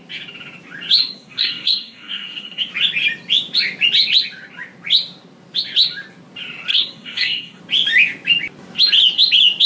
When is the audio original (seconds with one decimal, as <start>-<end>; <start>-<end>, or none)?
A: 0.0-1.0; 2.7-6.7; 7.6-9.7